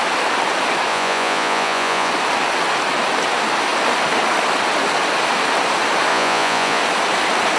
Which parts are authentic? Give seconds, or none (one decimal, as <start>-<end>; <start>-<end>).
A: 0.0-0.9; 2.1-6.1; 6.8-7.6